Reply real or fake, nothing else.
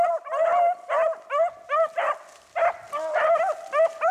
real